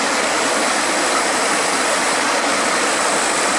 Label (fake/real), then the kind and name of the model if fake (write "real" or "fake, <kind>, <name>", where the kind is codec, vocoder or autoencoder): real